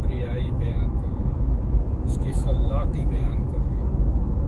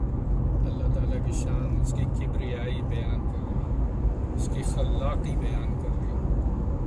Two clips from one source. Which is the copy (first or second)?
first